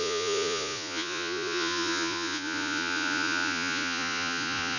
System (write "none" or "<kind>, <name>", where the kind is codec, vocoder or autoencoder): vocoder, Vocos